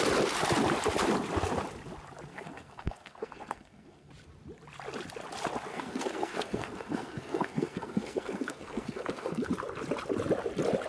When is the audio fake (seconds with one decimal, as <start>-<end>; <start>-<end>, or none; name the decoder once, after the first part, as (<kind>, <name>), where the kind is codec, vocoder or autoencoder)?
2.3-4.1 (codec, SNAC); 5.7-9.5